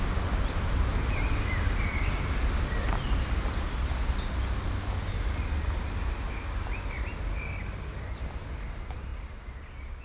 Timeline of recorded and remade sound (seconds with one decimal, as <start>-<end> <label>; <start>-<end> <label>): 0.0-10.0 recorded